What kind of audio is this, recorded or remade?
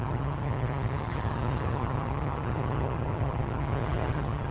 remade